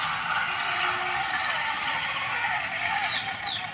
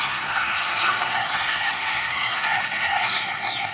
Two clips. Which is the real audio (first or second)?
first